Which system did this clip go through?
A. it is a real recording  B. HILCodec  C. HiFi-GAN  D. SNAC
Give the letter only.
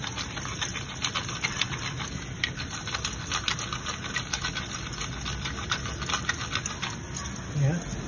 A